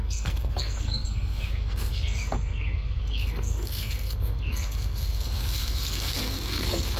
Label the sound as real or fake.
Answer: fake